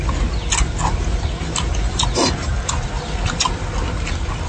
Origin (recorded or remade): recorded